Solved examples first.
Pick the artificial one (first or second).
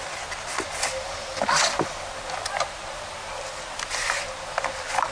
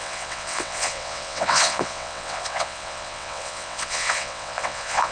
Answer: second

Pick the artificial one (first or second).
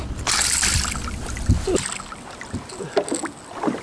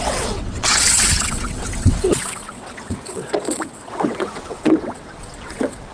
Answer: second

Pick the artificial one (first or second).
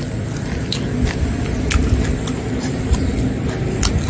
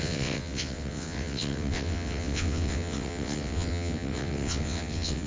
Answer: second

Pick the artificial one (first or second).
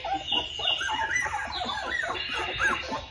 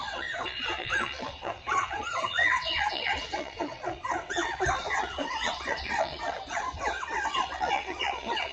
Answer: second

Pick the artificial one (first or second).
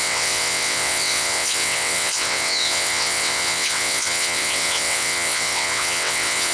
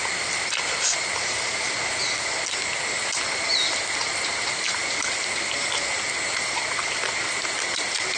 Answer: first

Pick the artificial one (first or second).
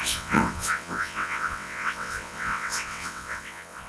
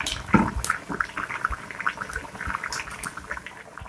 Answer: first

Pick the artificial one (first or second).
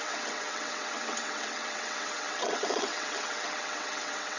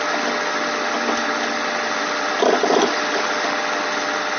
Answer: first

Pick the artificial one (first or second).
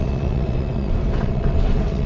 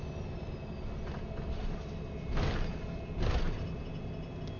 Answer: first